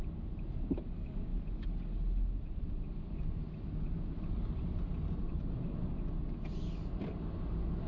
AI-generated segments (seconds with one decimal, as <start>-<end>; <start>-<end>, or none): none